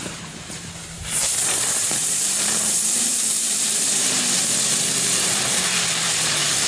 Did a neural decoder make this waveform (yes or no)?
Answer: yes